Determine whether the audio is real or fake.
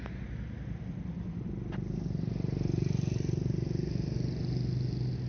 real